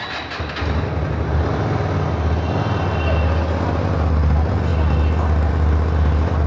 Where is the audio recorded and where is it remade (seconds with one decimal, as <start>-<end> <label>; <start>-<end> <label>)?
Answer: 0.0-6.5 recorded